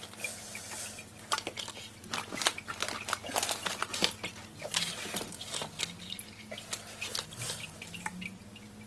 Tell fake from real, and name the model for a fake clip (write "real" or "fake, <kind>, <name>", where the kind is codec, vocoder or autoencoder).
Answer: real